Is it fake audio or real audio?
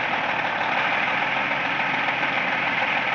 fake